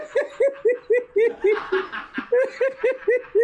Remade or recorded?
recorded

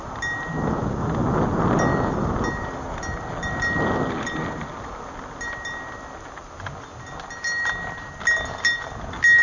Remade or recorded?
recorded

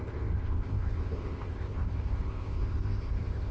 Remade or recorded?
remade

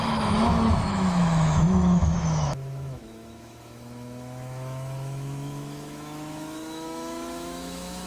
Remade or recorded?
remade